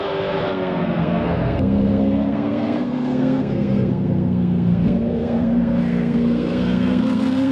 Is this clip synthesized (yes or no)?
yes